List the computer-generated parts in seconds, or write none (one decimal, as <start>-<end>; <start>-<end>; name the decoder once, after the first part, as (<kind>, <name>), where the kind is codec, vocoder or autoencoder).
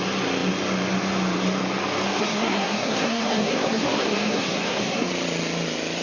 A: 2.2-5.1 (codec, SNAC)